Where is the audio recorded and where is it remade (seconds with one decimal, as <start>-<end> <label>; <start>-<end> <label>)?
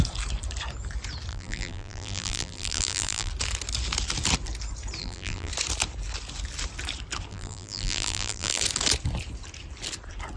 0.0-1.3 recorded; 1.3-3.3 remade; 3.3-5.0 recorded; 5.0-5.5 remade; 5.5-7.3 recorded; 7.3-8.6 remade; 8.6-10.4 recorded